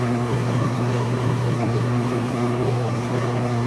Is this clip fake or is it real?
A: fake